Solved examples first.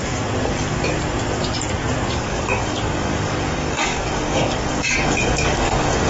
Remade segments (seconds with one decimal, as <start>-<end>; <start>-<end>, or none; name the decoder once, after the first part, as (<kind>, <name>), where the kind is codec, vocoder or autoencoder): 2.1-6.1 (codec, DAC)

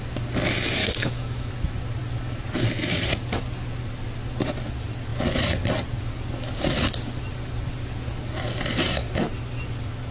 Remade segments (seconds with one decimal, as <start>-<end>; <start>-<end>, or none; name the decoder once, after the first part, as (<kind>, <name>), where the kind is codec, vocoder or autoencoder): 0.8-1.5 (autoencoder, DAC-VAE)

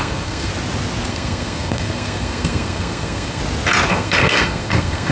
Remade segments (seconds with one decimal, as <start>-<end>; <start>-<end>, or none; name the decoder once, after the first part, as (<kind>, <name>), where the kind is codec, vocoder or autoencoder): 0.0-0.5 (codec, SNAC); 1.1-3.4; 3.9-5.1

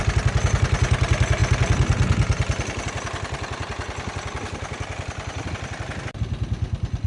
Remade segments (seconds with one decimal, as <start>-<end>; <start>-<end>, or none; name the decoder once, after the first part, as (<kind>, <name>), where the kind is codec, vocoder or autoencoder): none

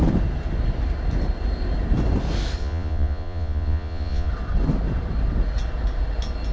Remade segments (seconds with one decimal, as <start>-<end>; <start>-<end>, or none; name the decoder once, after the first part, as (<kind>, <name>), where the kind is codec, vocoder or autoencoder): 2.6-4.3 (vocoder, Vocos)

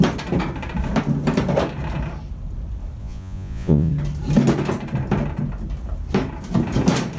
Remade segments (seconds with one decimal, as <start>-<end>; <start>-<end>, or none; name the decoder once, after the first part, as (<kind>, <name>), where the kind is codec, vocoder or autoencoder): 3.0-3.9 (vocoder, Vocos)